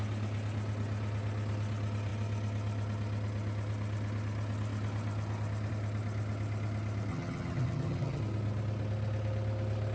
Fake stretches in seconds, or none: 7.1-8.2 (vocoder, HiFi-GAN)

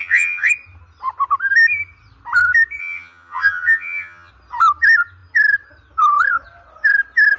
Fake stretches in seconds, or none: 0.0-0.5 (vocoder, HiFi-GAN); 2.8-4.3

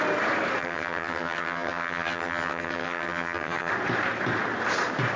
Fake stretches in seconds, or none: 0.6-3.7 (vocoder, HiFi-GAN)

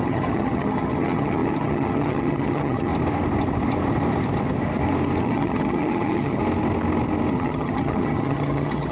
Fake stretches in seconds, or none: 0.0-2.9 (vocoder, HiFi-GAN); 5.2-6.4; 7.3-8.9

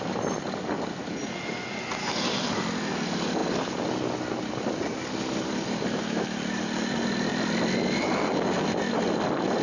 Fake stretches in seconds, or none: none